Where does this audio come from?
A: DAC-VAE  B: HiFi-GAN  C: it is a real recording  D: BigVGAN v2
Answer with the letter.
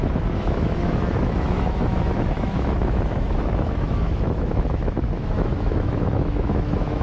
A